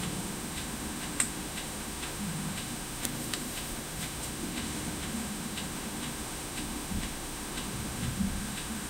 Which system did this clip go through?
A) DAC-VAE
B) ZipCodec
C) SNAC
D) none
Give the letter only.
A